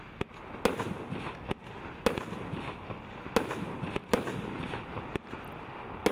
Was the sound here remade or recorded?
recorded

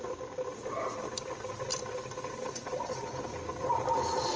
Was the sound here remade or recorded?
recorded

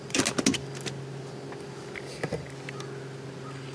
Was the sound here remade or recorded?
recorded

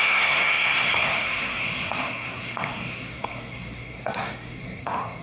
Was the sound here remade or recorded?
remade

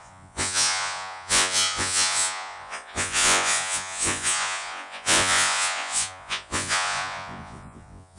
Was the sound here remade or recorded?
remade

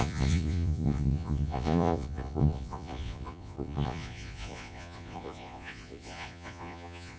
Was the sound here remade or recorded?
remade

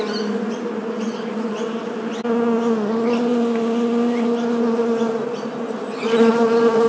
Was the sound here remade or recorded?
recorded